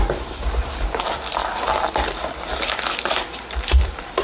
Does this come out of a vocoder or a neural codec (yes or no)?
no